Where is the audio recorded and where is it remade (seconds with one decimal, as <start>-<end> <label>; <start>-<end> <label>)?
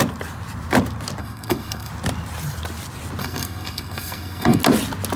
0.0-1.2 recorded; 1.2-1.9 remade; 1.9-3.2 recorded; 3.2-4.6 remade; 4.6-5.2 recorded